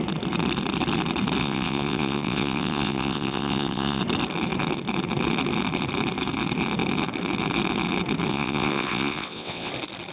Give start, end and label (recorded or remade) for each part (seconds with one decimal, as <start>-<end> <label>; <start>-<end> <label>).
0.0-1.4 recorded; 1.4-4.0 remade; 4.0-8.3 recorded; 8.3-9.7 remade; 9.7-10.1 recorded